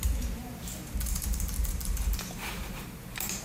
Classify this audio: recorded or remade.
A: remade